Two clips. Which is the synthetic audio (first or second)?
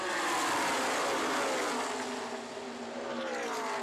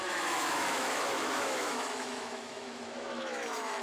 second